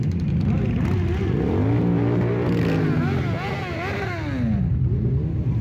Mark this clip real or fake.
real